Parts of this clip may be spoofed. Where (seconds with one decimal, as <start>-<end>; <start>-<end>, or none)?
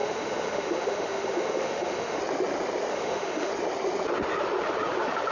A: 0.0-2.2; 2.9-3.5